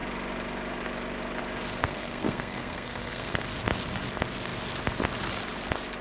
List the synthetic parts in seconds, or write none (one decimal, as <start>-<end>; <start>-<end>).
1.8-3.4